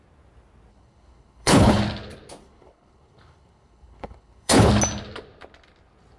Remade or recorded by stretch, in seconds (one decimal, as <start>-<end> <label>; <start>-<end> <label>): 0.0-0.7 recorded; 0.7-1.8 remade; 1.8-2.4 recorded; 2.4-4.7 remade; 4.7-6.2 recorded